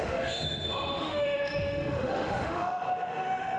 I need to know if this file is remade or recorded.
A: remade